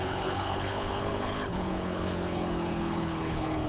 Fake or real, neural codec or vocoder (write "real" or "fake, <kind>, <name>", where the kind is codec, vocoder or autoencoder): fake, codec, HILCodec